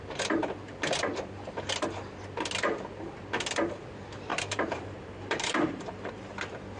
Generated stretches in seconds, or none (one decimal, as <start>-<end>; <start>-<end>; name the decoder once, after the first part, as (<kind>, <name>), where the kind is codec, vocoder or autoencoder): 4.3-6.1 (vocoder, BigVGAN v2)